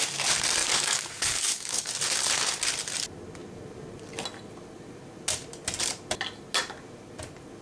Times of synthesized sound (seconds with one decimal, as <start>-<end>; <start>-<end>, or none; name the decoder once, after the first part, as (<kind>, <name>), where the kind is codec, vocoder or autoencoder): 0.6-1.9 (codec, DAC)

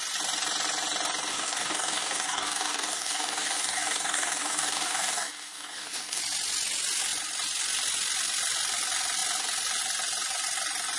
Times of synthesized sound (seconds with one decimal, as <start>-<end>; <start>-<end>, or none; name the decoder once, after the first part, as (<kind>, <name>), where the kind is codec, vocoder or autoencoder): 1.3-6.2 (codec, DAC)

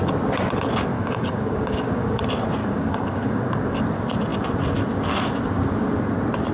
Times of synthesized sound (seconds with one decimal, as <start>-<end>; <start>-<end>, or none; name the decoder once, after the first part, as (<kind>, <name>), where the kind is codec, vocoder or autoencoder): 0.9-2.2 (codec, DAC); 2.6-3.8